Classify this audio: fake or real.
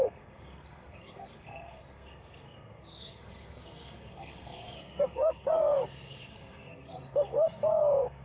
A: fake